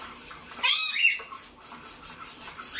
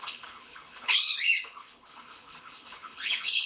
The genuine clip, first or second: first